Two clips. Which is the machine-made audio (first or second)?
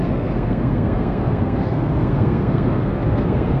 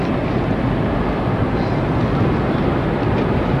first